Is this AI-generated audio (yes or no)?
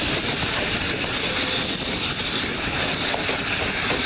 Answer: no